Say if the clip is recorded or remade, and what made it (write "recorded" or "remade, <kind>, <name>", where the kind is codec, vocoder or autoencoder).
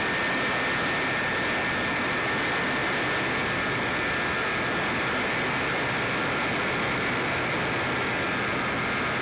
recorded